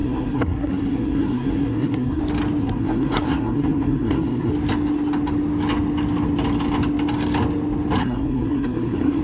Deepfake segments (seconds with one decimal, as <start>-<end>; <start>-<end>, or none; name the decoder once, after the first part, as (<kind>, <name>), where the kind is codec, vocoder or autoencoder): 0.0-2.2 (codec, SNAC); 2.6-4.5; 8.0-9.2